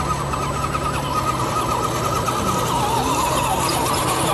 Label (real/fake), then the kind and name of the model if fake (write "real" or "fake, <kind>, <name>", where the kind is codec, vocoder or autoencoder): real